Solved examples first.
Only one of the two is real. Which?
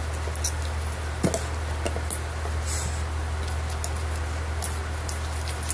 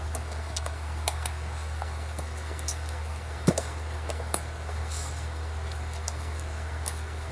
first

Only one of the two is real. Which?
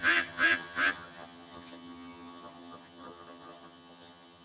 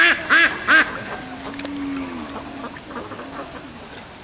second